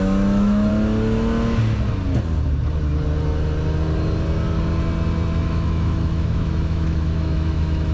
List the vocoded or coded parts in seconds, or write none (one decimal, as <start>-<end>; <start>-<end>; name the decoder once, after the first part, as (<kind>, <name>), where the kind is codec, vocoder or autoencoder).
0.0-0.7 (autoencoder, DAC-VAE); 5.4-7.9